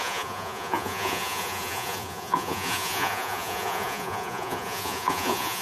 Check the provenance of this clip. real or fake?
fake